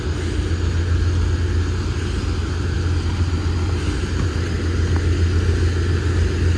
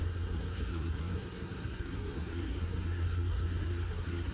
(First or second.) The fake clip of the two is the second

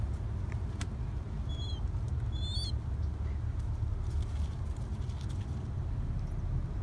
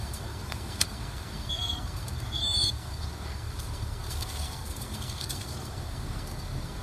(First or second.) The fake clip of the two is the second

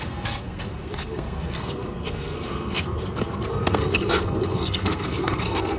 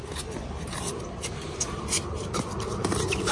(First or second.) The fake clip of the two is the first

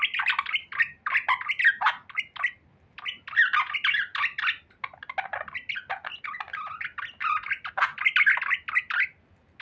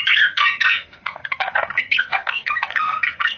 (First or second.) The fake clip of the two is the second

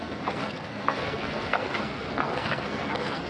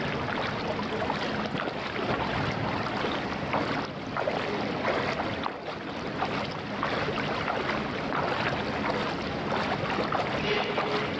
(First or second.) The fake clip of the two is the first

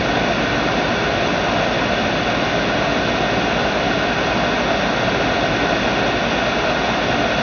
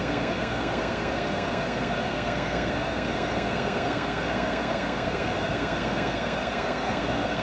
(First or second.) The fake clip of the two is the second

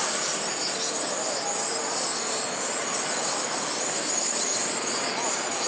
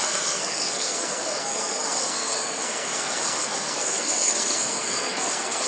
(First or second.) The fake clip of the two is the second